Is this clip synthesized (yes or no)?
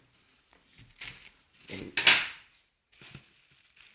no